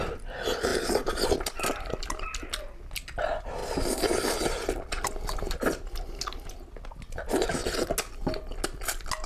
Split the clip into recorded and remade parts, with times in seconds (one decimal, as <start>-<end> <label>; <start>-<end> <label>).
0.0-0.7 recorded; 0.7-2.0 remade; 2.0-3.6 recorded; 3.6-4.5 remade; 4.5-9.3 recorded